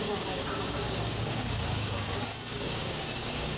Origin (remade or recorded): remade